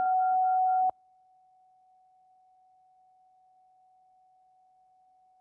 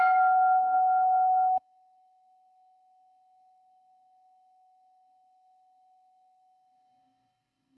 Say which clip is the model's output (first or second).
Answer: second